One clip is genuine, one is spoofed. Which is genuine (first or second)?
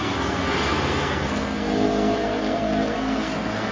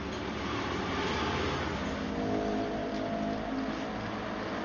second